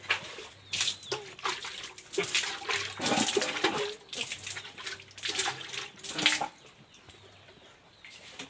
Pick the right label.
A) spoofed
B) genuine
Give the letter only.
B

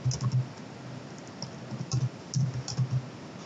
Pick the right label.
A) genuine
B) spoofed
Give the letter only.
A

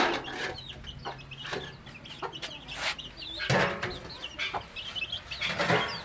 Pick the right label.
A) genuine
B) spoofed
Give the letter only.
A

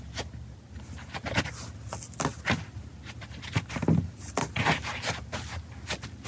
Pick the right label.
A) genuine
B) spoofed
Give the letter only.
A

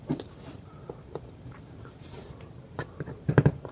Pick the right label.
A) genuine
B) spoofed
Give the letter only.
B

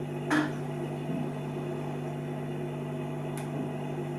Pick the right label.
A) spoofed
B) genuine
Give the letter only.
B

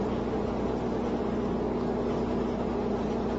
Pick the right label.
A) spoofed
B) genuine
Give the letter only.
B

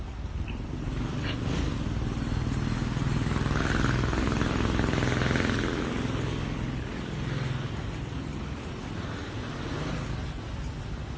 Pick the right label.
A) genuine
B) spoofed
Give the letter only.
A